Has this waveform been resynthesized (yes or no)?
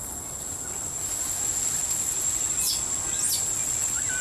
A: no